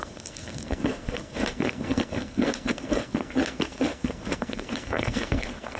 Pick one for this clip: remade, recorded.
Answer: remade